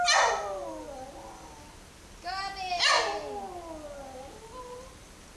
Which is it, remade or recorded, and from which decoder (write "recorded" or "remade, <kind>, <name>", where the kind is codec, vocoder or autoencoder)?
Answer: recorded